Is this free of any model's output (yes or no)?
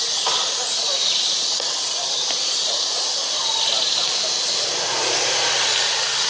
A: no